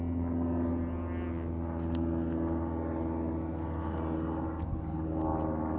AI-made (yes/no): no